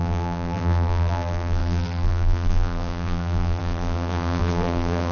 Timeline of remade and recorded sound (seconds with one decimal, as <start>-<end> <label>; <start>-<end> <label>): 0.0-5.1 remade

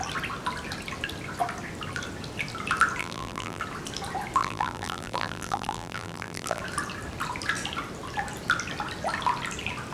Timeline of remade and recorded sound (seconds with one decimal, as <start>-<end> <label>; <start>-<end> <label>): 0.0-3.0 recorded; 3.0-3.6 remade; 3.6-4.4 recorded; 4.4-6.6 remade; 6.6-9.9 recorded

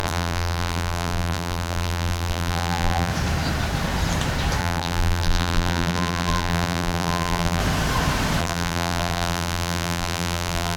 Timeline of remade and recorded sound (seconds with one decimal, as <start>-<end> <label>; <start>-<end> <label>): 0.0-3.1 remade; 3.1-4.6 recorded; 4.6-7.6 remade; 7.6-8.4 recorded; 8.4-10.8 remade

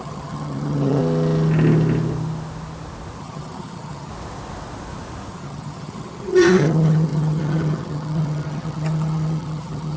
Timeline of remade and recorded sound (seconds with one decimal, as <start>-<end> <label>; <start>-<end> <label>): 0.0-1.0 remade; 1.0-3.2 recorded; 3.2-4.1 remade; 4.1-5.3 recorded; 5.3-10.0 remade

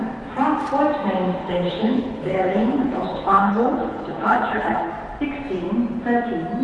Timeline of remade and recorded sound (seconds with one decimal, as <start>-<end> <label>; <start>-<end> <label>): 0.0-1.4 recorded; 1.4-4.9 remade; 4.9-6.6 recorded

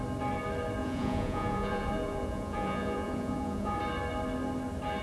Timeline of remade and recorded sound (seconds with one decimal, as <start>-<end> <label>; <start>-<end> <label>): 0.0-0.8 recorded; 0.8-3.8 remade; 3.8-5.0 recorded